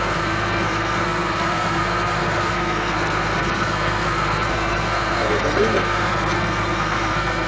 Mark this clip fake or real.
fake